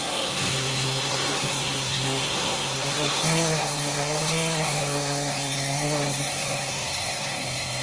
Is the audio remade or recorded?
remade